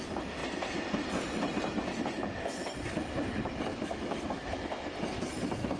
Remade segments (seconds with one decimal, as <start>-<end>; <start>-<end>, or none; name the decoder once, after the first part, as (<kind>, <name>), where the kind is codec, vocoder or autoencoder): 3.7-4.6 (autoencoder, DAC-VAE)